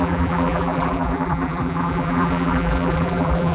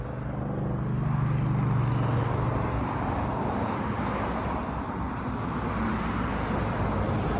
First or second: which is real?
second